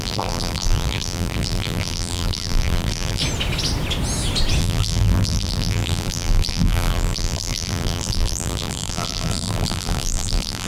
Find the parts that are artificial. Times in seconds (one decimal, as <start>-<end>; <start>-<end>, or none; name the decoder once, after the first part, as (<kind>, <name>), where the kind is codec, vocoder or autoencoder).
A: 0.0-3.2 (vocoder, BigVGAN v2); 4.6-10.7